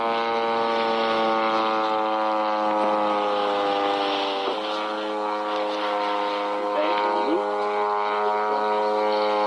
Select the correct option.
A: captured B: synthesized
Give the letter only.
A